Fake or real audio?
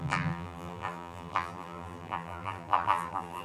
fake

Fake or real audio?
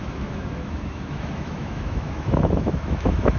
fake